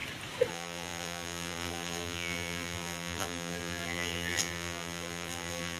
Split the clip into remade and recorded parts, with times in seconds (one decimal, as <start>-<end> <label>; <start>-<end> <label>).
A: 0.0-0.5 recorded; 0.5-5.8 remade